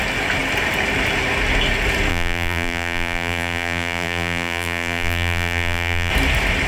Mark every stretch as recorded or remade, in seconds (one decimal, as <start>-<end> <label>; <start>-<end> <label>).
0.0-2.1 recorded; 2.1-6.1 remade; 6.1-6.7 recorded